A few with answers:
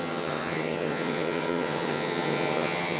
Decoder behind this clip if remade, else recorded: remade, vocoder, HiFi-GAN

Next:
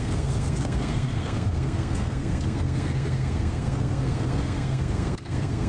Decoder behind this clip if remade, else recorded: remade, codec, SNAC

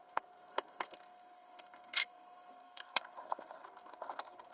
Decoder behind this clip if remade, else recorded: remade, codec, SNAC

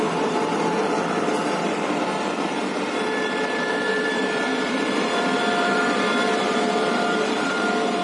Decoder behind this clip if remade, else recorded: remade, vocoder, BigVGAN v2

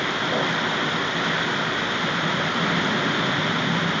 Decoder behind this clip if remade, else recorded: recorded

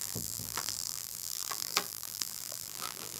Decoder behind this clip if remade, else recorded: remade, vocoder, BigVGAN v2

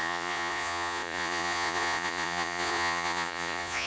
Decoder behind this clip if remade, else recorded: remade, vocoder, Vocos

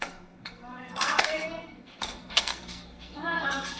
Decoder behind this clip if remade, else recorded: remade, codec, SNAC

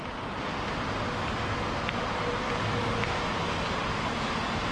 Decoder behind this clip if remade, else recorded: recorded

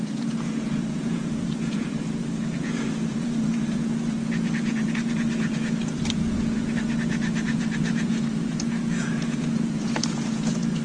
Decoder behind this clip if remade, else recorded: remade, vocoder, Vocos